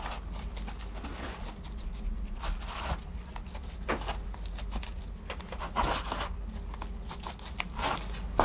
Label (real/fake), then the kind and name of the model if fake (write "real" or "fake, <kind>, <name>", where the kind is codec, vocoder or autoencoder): real